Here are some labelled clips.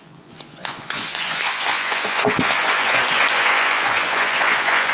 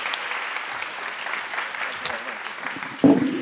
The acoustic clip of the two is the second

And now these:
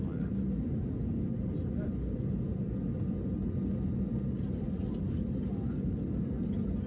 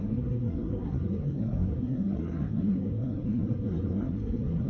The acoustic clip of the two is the first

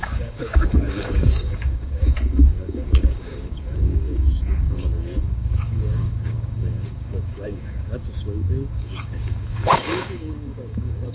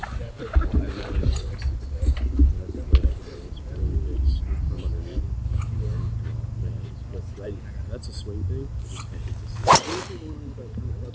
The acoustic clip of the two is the second